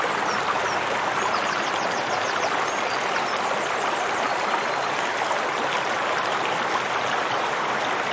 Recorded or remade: recorded